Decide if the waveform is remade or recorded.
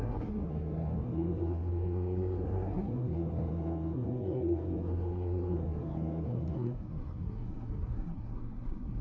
remade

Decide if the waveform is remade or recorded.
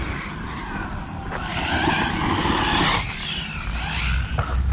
recorded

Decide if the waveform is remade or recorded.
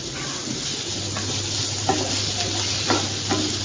recorded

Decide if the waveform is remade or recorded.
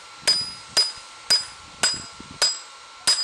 recorded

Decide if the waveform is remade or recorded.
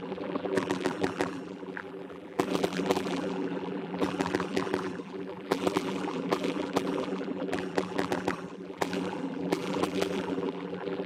remade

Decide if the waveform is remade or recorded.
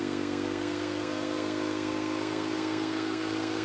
remade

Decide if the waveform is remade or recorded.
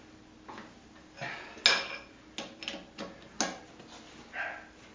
recorded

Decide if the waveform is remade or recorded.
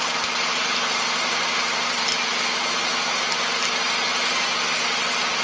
recorded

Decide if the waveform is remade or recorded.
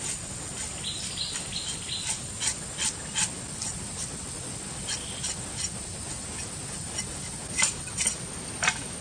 recorded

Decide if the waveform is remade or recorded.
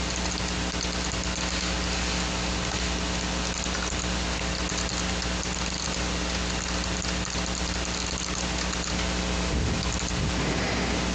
recorded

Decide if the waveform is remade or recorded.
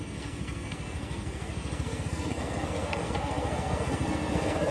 remade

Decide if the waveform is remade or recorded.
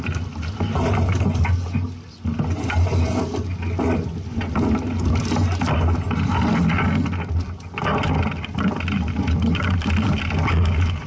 recorded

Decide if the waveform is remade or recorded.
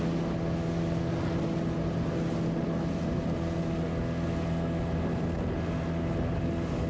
recorded